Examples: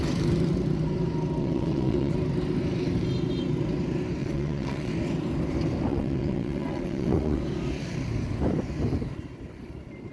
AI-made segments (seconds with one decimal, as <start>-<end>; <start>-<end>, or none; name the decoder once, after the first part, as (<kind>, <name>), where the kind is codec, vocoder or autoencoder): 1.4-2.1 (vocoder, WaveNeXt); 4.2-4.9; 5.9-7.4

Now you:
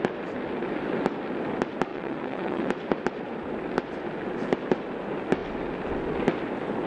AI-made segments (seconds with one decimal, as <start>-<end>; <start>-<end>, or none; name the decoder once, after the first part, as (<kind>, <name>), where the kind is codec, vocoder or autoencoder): 1.9-2.7 (vocoder, WaveNeXt)

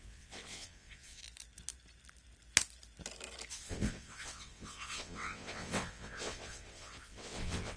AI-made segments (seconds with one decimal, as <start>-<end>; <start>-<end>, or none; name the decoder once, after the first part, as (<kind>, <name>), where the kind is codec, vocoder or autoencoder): 0.0-1.2 (vocoder, WaveNeXt); 3.5-7.8

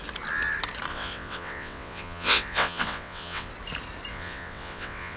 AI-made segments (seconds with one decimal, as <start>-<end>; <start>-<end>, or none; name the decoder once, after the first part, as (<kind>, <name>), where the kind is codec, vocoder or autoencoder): 0.9-3.5 (vocoder, WaveNeXt); 4.1-5.2

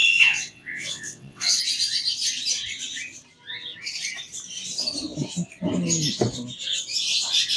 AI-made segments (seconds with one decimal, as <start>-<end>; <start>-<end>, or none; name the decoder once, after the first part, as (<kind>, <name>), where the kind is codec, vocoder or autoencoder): 0.0-1.6 (vocoder, WaveNeXt)

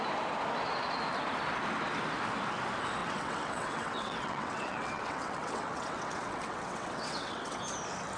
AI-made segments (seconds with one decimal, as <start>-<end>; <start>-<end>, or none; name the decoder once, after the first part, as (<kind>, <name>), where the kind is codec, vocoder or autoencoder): 3.0-7.6 (vocoder, WaveNeXt)

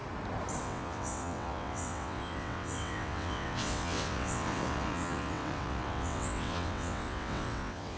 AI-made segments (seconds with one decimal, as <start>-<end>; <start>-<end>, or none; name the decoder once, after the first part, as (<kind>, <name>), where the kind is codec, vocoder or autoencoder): 0.6-8.0 (vocoder, WaveNeXt)

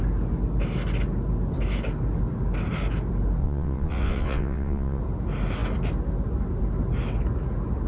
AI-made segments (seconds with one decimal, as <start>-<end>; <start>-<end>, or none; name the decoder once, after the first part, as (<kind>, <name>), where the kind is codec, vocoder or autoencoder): 3.4-5.0 (vocoder, WaveNeXt)